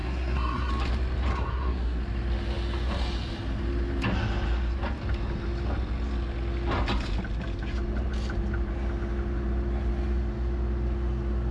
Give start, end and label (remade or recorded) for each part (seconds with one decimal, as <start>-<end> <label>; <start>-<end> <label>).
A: 0.0-0.7 remade; 0.7-1.3 recorded; 1.3-2.0 remade; 2.0-11.5 recorded